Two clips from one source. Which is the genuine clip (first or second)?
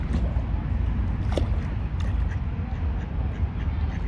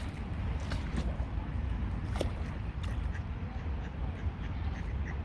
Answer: first